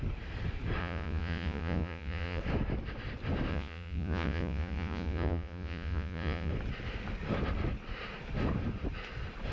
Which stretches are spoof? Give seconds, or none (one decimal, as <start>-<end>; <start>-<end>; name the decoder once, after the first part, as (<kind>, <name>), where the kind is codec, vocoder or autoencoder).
0.8-2.4 (vocoder, Vocos); 3.5-6.5

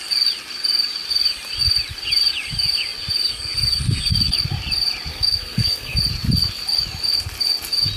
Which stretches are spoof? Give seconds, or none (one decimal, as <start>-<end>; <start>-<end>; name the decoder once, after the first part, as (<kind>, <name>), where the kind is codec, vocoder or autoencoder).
5.1-6.0 (codec, SNAC)

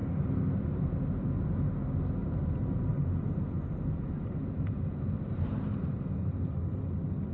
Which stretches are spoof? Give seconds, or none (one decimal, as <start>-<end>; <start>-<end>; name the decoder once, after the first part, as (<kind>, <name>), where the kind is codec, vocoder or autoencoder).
0.0-0.6 (vocoder, BigVGAN v2); 2.2-6.5

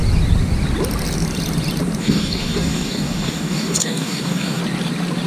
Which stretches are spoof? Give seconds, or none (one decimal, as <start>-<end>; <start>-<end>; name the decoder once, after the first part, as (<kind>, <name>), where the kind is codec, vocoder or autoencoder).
2.0-4.6 (codec, DAC)

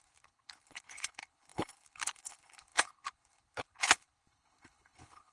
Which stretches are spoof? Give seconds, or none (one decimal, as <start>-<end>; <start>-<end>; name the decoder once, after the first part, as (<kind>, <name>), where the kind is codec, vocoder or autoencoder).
0.0-5.3 (codec, HILCodec)

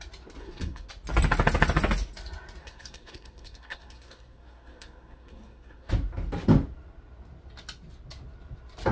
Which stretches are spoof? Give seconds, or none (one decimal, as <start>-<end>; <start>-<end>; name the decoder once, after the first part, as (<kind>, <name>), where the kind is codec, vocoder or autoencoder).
0.4-0.9 (codec, SNAC); 2.6-5.9

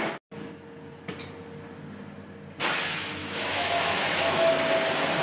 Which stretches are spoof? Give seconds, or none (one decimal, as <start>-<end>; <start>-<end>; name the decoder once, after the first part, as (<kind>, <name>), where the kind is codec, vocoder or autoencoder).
3.2-4.5 (autoencoder, DAC-VAE)